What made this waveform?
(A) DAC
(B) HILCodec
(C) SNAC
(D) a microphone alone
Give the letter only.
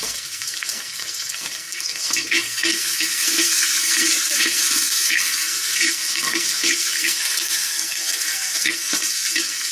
C